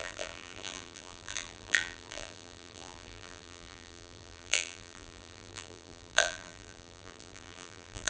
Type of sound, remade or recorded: remade